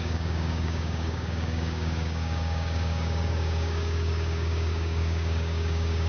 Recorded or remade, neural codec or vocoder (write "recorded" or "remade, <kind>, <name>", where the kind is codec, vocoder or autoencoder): remade, codec, DAC